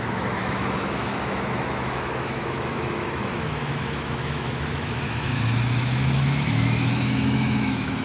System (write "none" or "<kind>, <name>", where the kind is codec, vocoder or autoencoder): autoencoder, DAC-VAE